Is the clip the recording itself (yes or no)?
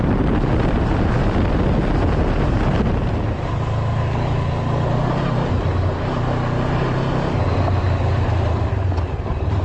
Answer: yes